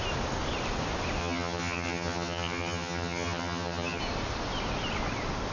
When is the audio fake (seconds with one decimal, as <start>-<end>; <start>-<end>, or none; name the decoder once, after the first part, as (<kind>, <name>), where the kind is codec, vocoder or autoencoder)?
1.2-4.0 (vocoder, HiFi-GAN)